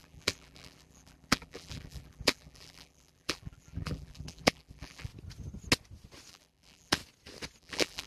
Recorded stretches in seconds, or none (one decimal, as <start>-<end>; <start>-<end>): 5.1-6.3; 7.0-7.6